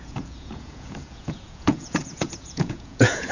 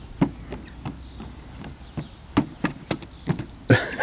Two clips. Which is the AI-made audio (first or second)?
first